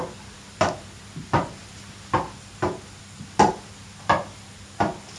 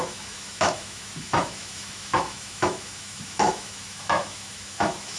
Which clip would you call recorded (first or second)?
first